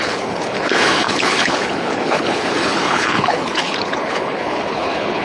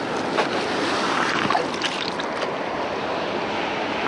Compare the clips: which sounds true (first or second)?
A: second